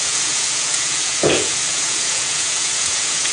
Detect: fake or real fake